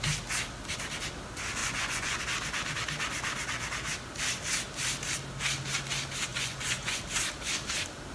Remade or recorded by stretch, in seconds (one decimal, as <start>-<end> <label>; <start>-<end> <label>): 0.0-1.6 recorded; 1.6-2.2 remade; 2.2-6.3 recorded; 6.3-7.0 remade; 7.0-8.1 recorded